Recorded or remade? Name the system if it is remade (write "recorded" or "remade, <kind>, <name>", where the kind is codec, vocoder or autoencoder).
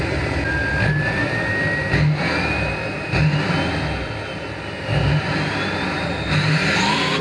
recorded